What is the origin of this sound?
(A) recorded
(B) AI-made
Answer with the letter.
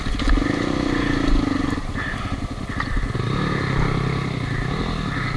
A